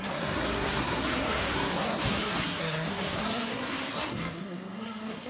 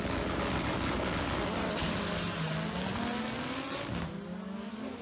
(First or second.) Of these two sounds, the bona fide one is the second